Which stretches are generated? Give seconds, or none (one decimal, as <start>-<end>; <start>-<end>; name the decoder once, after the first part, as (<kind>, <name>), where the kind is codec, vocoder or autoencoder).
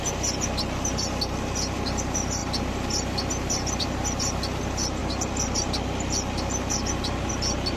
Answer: none